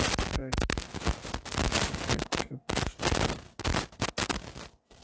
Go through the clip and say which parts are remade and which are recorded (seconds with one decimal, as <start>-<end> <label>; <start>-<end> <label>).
0.0-5.0 recorded